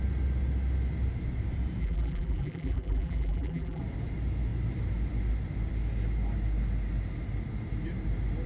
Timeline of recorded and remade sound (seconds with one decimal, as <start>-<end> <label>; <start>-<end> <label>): 0.0-1.8 recorded; 1.8-3.8 remade; 3.8-8.5 recorded